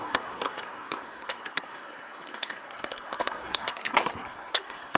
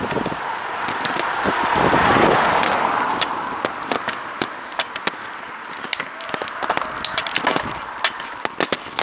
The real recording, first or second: second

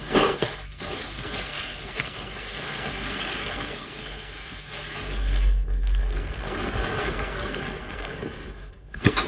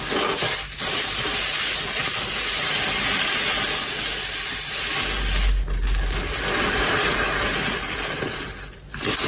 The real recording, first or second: second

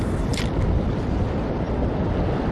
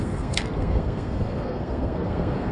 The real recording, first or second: first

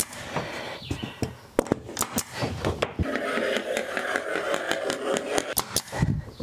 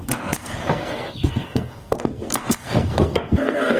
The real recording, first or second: first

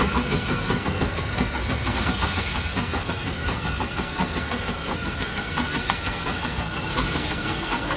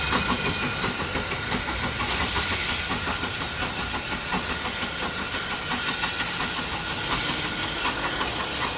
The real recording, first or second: second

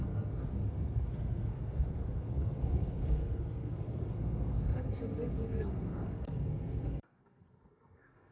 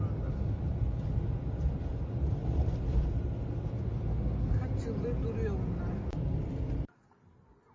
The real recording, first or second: second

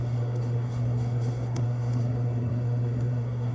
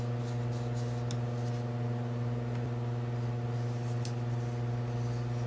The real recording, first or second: second